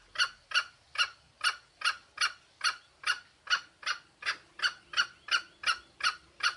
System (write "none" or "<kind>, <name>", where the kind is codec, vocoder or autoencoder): none